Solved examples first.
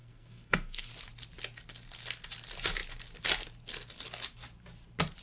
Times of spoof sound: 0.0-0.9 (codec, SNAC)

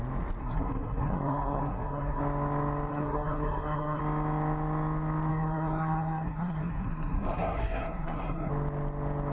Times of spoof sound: 0.4-2.2 (codec, SNAC); 2.9-4.0; 5.3-8.5

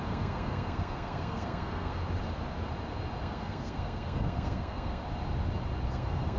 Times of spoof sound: 0.0-2.0 (codec, SNAC); 3.2-5.0; 5.9-6.4

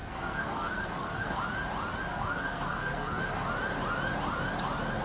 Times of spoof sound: 0.0-1.4 (codec, SNAC); 2.1-3.2

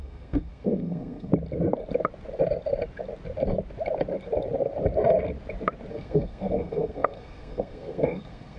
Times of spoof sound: 0.0-1.3 (codec, SNAC); 5.9-8.6